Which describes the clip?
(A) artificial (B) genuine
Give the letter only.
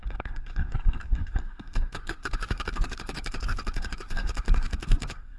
A